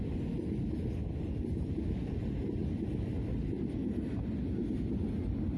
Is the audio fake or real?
real